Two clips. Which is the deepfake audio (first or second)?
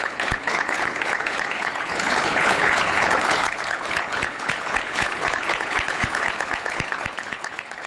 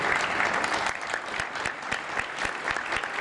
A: first